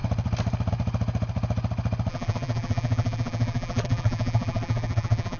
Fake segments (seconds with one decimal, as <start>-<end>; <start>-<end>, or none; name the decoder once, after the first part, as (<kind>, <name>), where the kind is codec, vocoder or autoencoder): 2.1-5.4 (vocoder, BigVGAN v2)

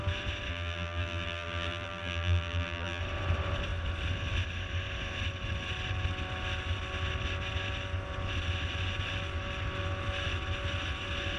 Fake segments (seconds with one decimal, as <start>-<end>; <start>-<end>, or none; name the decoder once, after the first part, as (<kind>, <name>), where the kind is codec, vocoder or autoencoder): 0.5-3.0 (vocoder, BigVGAN v2)